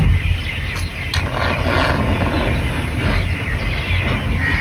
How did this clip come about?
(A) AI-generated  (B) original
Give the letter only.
B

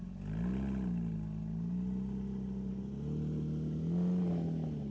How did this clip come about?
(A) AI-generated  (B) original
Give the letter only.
B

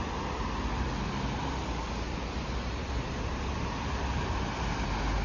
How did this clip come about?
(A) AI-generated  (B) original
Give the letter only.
B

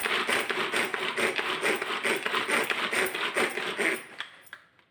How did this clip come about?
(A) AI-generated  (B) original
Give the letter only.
B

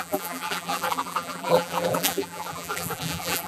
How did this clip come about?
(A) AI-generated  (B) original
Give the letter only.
A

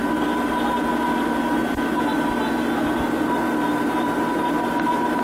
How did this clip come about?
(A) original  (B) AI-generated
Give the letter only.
A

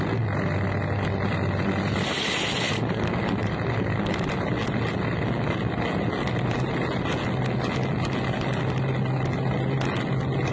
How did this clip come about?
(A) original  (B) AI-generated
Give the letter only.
A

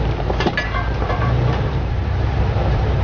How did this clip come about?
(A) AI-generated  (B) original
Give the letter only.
A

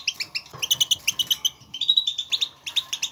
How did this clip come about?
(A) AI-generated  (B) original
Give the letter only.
B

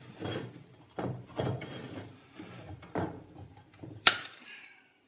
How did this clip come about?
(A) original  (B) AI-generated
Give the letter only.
B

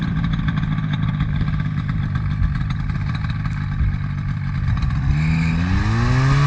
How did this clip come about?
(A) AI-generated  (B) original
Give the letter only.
B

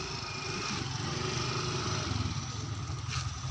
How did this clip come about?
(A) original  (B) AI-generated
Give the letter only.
A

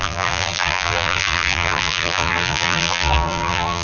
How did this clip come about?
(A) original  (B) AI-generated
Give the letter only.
B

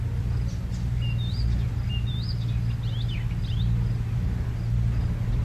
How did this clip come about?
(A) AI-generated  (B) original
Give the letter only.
B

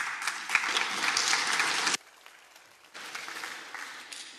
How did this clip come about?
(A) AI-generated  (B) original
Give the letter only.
B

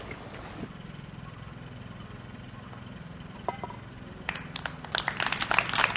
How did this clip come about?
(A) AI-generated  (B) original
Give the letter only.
B